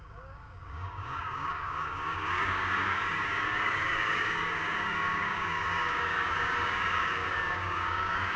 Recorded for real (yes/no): no